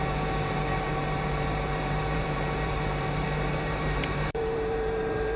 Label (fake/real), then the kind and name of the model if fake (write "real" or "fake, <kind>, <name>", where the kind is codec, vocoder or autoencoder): fake, vocoder, BigVGAN v2